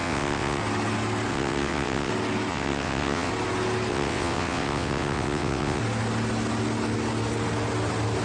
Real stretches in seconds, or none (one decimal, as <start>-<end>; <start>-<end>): 0.6-1.3; 2.1-2.5; 3.3-3.9; 5.8-8.2